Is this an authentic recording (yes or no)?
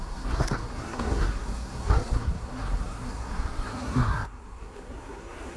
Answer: no